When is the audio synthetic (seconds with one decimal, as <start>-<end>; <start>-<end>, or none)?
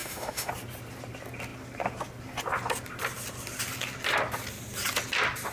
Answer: 0.0-0.5